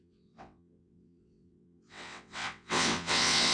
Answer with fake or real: fake